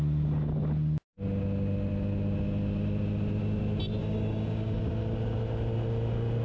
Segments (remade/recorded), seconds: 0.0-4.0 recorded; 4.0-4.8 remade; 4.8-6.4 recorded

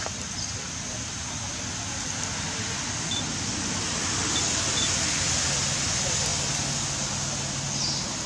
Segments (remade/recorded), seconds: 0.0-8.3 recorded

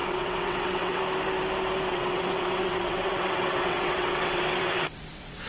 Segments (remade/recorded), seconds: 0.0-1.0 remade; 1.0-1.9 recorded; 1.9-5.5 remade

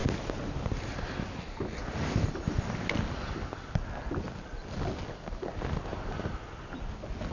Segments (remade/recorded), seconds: 0.0-7.3 recorded

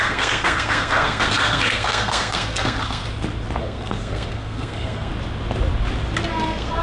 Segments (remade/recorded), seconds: 0.0-3.0 remade; 3.0-3.6 recorded; 3.6-5.1 remade; 5.1-6.3 recorded; 6.3-6.8 remade

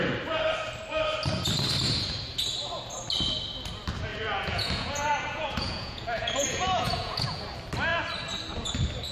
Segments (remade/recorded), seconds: 0.0-4.1 recorded; 4.1-7.4 remade; 7.4-9.1 recorded

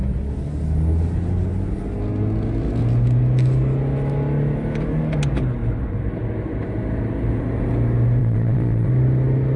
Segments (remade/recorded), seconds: 0.0-8.2 recorded; 8.2-8.9 remade; 8.9-9.6 recorded